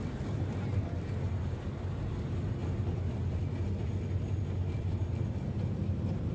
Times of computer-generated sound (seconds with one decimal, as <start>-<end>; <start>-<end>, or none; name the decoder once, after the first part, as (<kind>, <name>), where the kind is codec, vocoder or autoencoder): none